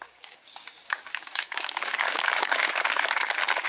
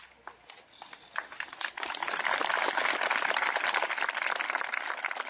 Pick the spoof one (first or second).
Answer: first